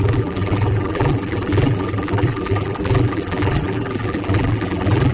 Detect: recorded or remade remade